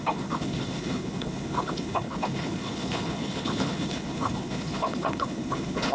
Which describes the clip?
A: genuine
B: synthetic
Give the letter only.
B